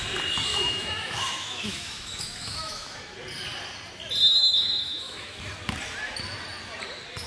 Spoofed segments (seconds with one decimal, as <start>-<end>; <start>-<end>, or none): 0.5-3.0; 4.4-5.4